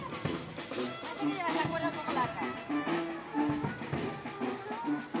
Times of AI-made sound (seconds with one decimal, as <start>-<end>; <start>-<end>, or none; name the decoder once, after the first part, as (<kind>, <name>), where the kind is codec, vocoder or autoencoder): 3.3-4.2 (codec, DAC)